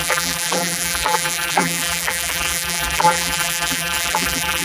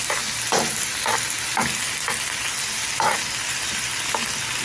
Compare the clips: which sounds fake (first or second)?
first